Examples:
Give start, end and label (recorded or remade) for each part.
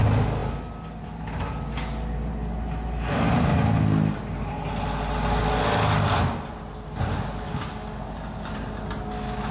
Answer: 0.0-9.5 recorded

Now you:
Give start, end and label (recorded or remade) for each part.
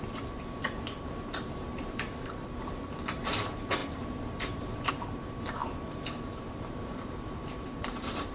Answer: 0.0-8.3 remade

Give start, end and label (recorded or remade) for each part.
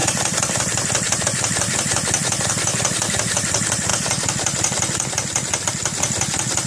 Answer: 0.0-1.2 remade; 1.2-2.2 recorded; 2.2-2.9 remade; 2.9-6.7 recorded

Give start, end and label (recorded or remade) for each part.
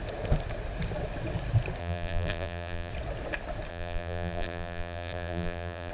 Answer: 0.0-1.8 recorded; 1.8-2.9 remade; 2.9-3.7 recorded; 3.7-5.9 remade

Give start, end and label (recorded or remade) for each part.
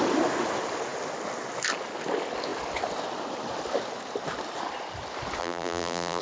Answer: 0.0-5.4 recorded; 5.4-6.2 remade